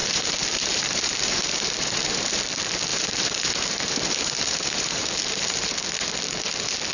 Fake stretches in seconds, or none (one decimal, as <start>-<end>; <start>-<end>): 0.0-2.4; 2.9-5.8